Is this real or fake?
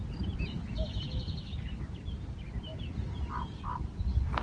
fake